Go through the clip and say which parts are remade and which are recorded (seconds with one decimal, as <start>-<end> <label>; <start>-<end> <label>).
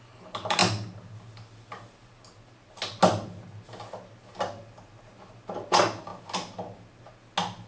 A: 0.0-7.7 recorded